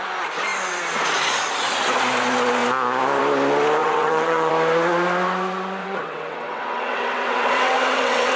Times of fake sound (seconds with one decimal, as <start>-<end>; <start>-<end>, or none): 3.8-4.5; 5.8-8.4